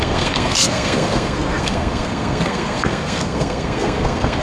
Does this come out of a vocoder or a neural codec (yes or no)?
yes